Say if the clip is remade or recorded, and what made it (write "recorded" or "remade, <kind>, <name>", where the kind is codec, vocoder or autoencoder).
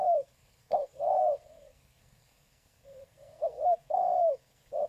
remade, codec, SNAC